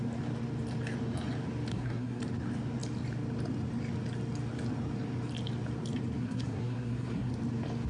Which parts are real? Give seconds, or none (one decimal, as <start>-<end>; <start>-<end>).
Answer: 0.0-1.7; 2.2-6.2; 7.3-7.9